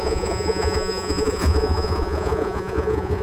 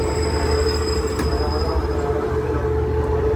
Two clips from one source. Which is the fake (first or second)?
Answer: first